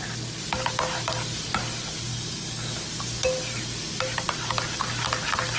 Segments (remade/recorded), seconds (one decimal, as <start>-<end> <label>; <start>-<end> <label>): 0.0-2.1 recorded; 2.1-2.9 remade; 2.9-5.6 recorded